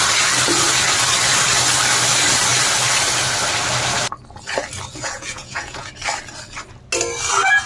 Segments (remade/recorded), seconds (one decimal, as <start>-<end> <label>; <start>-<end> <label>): 0.0-4.9 recorded; 4.9-5.9 remade; 5.9-7.7 recorded

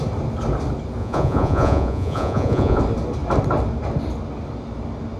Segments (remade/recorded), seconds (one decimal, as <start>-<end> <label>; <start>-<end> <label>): 0.0-1.0 recorded; 1.0-2.8 remade; 2.8-5.2 recorded

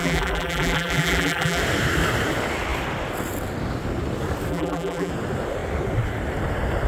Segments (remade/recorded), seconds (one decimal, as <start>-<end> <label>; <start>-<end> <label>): 0.0-1.6 remade; 1.6-4.5 recorded; 4.5-5.1 remade; 5.1-6.9 recorded

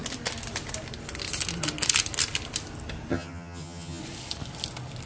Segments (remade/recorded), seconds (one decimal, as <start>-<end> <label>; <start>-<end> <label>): 0.0-3.1 recorded; 3.1-4.0 remade; 4.0-5.1 recorded

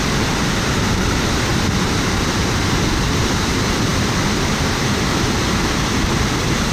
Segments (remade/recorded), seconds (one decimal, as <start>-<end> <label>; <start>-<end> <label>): 0.0-1.5 recorded; 1.5-3.2 remade; 3.2-3.9 recorded; 3.9-5.5 remade; 5.5-6.7 recorded

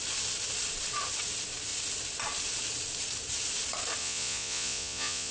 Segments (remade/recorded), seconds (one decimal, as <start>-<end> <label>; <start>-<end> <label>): 0.0-4.0 recorded; 4.0-5.3 remade

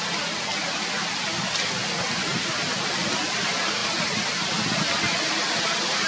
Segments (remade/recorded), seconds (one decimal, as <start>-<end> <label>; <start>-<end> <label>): 0.0-6.1 recorded